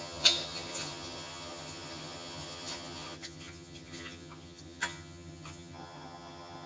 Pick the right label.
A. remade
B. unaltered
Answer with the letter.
A